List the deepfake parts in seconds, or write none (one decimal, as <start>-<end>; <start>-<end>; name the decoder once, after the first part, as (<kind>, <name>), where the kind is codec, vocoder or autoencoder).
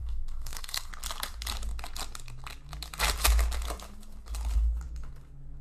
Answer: 0.0-0.9 (codec, SNAC)